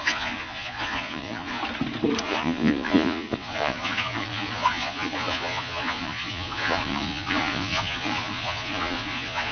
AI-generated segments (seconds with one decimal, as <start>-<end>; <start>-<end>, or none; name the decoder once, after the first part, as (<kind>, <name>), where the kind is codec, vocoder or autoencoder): 0.0-1.6 (vocoder, Vocos); 2.2-9.5